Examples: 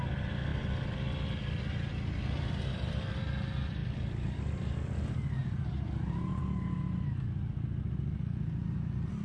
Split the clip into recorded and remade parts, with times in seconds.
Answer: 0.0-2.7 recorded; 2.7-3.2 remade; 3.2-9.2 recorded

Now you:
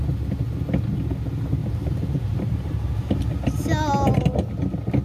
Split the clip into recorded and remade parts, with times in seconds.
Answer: 0.0-1.6 recorded; 1.6-3.2 remade; 3.2-5.0 recorded